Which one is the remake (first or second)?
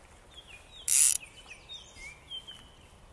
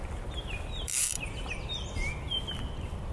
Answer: second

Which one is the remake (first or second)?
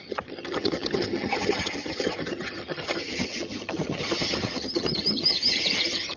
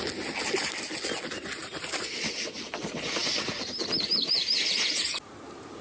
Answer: first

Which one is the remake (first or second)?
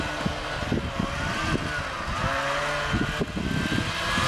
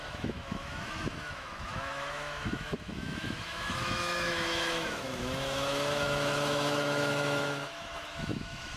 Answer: second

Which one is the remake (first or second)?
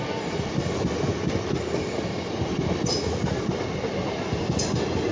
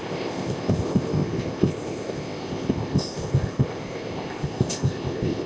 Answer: second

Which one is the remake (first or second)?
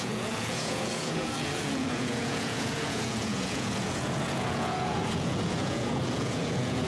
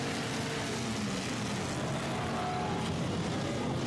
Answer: first